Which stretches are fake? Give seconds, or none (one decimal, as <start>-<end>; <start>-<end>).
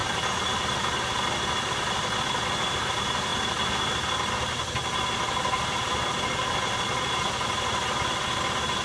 none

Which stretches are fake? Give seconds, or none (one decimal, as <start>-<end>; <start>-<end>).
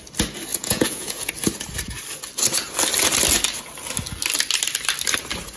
0.5-1.3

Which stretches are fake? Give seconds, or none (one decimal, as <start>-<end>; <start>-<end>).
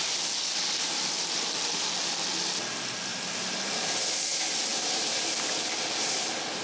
none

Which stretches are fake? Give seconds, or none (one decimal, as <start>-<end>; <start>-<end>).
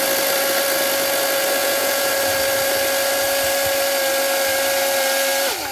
1.6-2.1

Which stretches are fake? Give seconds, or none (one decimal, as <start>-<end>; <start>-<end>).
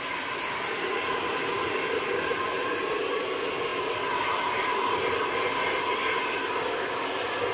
none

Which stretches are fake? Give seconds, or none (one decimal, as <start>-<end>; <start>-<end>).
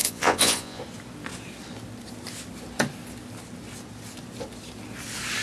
0.0-0.8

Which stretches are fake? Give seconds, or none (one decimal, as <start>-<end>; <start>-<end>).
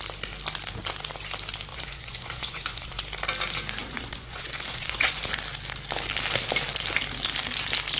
1.7-3.0; 3.8-5.2